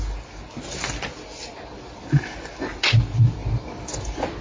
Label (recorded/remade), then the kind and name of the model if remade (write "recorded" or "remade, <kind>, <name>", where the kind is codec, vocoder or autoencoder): recorded